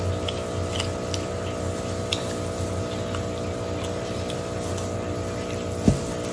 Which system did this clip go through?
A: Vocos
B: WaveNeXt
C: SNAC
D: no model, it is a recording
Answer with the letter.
D